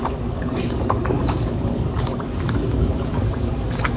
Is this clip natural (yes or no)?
no